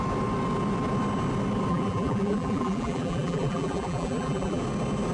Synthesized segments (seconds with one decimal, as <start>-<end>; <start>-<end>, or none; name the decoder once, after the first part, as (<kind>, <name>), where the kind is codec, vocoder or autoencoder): 1.7-4.6 (vocoder, BigVGAN v2)